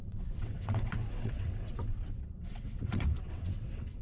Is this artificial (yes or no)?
yes